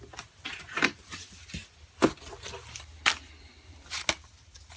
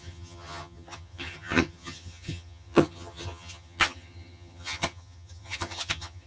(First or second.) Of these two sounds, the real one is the first